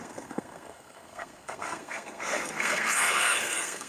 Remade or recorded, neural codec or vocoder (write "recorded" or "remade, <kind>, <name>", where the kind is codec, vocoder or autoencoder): remade, codec, SNAC